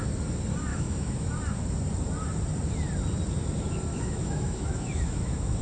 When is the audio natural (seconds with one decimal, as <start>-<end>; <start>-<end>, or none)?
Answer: 0.0-0.7; 1.3-3.9